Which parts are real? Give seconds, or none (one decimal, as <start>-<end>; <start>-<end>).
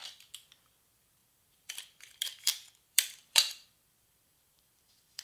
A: 0.0-0.7